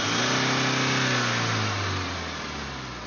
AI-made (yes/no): no